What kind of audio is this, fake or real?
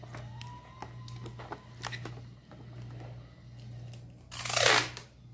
real